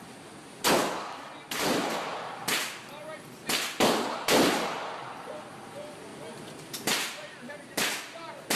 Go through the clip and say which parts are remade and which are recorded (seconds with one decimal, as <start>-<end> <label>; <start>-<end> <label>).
0.0-8.6 recorded

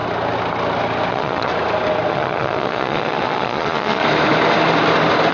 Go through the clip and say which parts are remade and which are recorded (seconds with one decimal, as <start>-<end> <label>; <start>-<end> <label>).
0.0-1.1 recorded; 1.1-1.5 remade; 1.5-2.1 recorded; 2.1-4.0 remade; 4.0-5.3 recorded